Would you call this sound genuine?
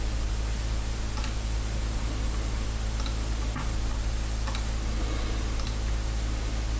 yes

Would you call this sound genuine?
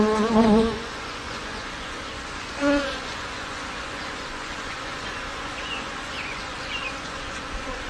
no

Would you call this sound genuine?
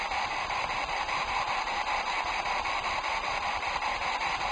yes